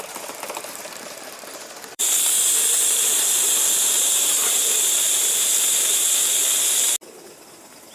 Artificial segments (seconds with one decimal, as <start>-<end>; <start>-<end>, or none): 0.0-6.4